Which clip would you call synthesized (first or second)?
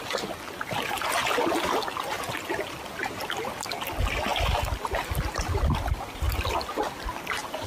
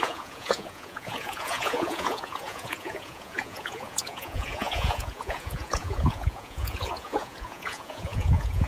second